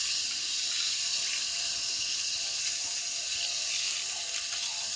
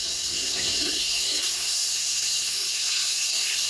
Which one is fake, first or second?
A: second